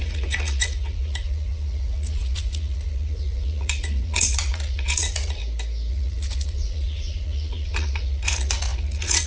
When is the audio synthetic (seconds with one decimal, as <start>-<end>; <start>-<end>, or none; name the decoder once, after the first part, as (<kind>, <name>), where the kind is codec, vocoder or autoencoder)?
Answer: 0.0-5.4 (vocoder, Vocos); 5.9-9.3